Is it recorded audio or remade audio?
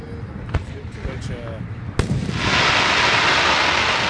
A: recorded